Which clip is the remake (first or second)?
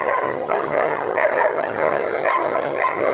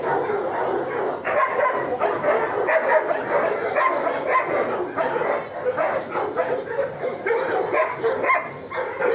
first